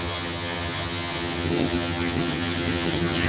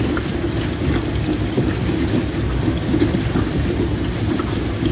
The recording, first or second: second